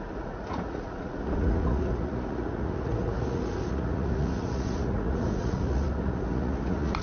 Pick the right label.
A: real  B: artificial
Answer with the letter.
B